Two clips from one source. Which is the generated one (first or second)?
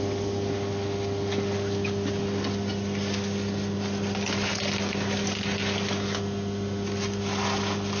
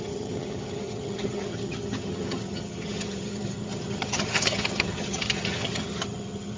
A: second